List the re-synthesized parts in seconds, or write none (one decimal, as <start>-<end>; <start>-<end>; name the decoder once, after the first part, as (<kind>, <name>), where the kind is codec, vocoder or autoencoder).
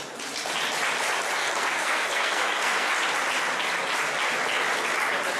1.4-2.9 (codec, SNAC)